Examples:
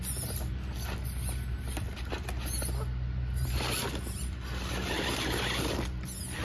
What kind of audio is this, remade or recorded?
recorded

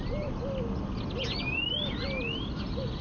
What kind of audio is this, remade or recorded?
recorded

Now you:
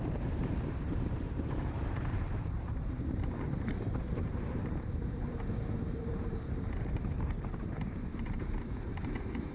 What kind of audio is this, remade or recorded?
remade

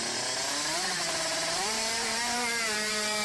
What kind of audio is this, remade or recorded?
remade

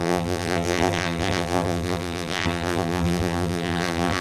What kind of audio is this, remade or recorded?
remade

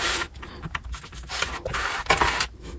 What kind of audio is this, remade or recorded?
remade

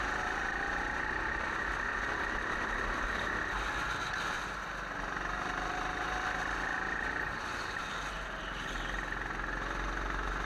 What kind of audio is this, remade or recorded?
recorded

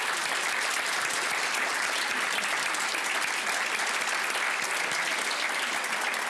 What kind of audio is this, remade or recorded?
remade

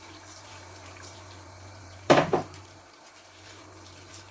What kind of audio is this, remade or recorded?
remade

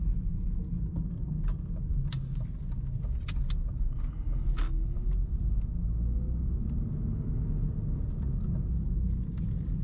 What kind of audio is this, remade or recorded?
recorded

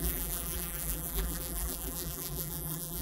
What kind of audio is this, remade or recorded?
remade